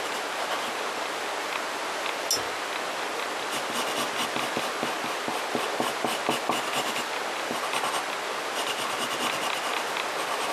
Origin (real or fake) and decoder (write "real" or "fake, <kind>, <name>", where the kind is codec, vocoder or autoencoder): real